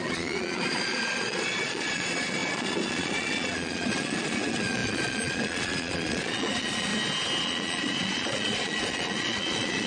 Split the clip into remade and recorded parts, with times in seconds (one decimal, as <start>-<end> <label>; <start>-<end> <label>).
0.0-6.9 remade; 6.9-7.4 recorded; 7.4-9.9 remade